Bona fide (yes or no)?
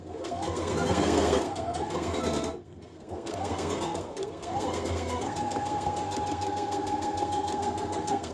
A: no